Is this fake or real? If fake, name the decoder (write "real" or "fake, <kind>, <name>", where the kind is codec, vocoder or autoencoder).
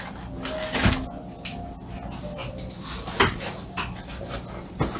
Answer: real